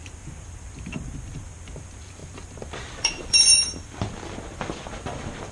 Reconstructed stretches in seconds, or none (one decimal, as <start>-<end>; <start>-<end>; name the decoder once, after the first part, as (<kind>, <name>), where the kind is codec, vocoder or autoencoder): 0.0-5.5 (vocoder, BigVGAN v2)